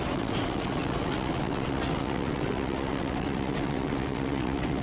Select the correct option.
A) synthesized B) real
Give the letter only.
A